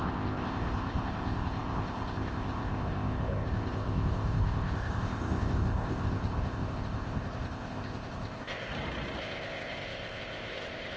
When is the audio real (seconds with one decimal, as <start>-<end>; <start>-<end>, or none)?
8.7-9.2